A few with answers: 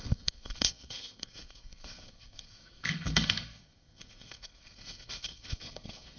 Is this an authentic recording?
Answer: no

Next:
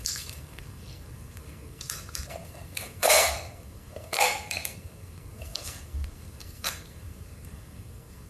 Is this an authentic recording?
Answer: no